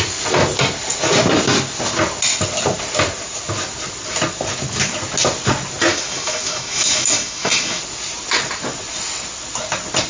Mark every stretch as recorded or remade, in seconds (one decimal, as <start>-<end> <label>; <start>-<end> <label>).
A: 0.0-5.9 recorded; 5.9-7.8 remade; 7.8-10.1 recorded